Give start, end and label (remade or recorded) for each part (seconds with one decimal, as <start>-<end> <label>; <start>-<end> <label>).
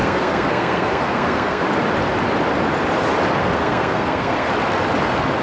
0.0-1.6 remade; 1.6-3.4 recorded; 3.4-4.5 remade; 4.5-5.4 recorded